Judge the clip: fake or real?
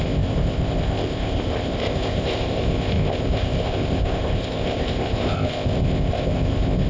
fake